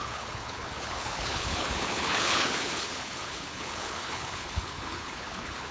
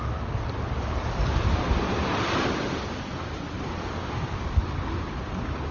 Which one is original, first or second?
second